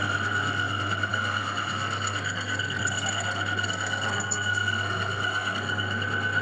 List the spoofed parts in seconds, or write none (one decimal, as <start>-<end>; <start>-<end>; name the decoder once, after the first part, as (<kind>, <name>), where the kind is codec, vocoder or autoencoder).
0.0-6.4 (codec, SNAC)